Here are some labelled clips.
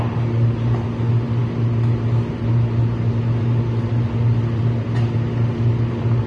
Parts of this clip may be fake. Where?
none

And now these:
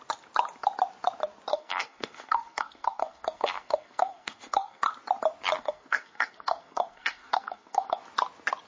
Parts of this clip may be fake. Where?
1.5-4.9 (codec, SNAC); 5.6-8.0

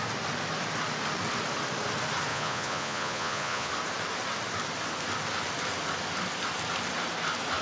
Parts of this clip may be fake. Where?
2.3-3.7 (vocoder, Vocos)

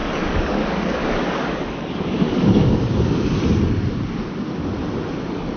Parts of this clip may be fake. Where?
0.0-3.4 (codec, DAC)

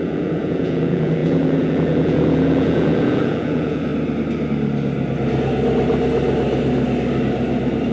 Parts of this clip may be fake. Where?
0.0-3.9 (vocoder, Vocos)